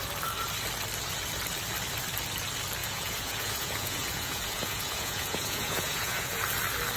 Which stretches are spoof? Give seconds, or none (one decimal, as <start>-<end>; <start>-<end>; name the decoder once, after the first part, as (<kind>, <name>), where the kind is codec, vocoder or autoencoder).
2.8-6.4 (vocoder, Vocos)